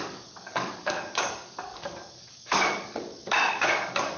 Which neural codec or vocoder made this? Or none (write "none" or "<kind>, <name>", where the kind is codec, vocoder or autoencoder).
codec, DAC